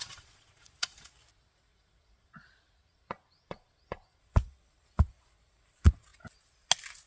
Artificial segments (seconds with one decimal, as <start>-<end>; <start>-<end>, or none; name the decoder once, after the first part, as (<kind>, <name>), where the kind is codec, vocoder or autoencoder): 0.0-1.1 (vocoder, Vocos); 1.7-4.6